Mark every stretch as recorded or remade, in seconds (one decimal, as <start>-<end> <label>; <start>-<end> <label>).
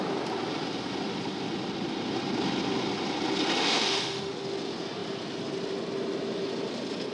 0.0-3.6 recorded; 3.6-4.3 remade; 4.3-7.1 recorded